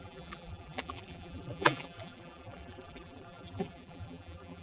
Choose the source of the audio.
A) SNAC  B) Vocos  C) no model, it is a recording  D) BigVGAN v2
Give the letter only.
D